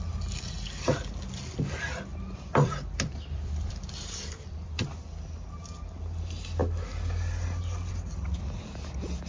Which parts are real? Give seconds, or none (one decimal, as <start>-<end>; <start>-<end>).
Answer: 0.0-2.1; 5.3-9.3